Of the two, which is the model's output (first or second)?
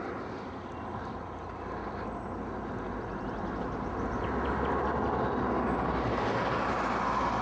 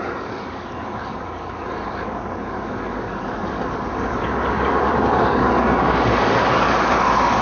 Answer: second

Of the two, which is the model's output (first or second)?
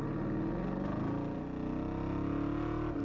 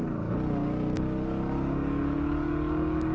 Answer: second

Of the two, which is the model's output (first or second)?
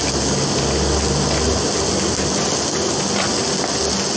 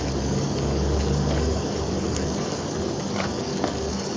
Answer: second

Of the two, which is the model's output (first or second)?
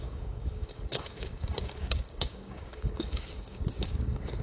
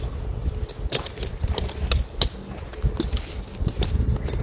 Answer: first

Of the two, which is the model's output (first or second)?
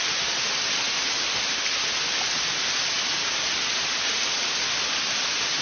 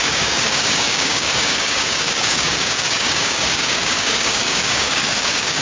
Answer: second